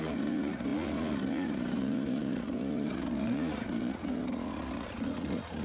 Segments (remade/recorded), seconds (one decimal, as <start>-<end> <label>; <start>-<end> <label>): 0.0-5.6 remade